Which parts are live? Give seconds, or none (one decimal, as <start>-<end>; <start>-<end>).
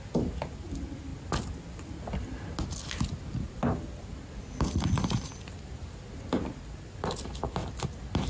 0.0-8.3